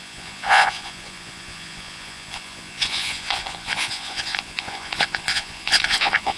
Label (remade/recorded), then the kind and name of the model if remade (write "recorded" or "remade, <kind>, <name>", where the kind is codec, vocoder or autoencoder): remade, vocoder, Vocos